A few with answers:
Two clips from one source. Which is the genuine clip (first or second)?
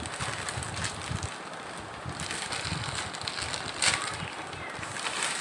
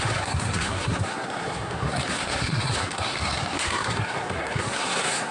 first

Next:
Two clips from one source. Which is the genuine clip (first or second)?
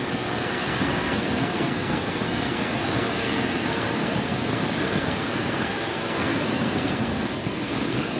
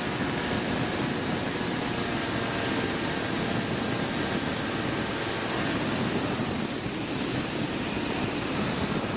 second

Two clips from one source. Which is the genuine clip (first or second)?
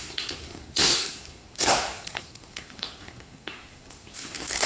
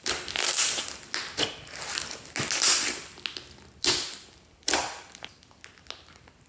second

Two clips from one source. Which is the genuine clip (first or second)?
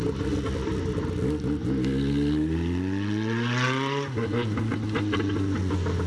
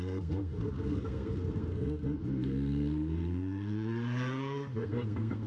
first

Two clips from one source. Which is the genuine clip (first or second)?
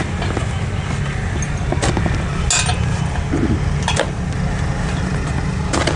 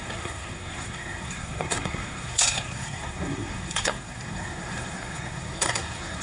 first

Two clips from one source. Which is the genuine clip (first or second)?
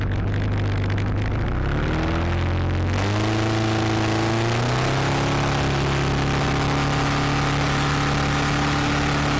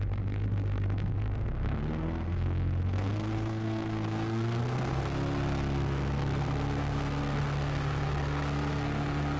first